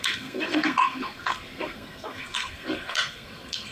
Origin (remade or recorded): remade